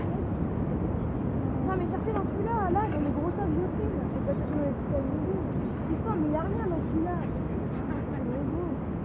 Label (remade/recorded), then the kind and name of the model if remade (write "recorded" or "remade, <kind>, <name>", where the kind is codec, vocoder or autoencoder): recorded